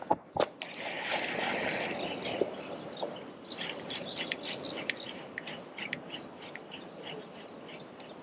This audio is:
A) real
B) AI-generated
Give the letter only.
A